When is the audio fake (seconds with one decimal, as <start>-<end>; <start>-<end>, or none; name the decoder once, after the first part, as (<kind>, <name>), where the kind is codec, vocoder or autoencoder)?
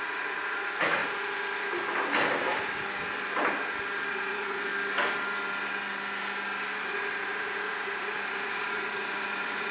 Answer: 0.0-1.0 (vocoder, Vocos); 4.1-4.7; 6.9-9.7